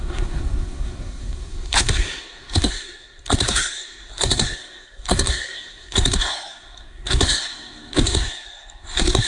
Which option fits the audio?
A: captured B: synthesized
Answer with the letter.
B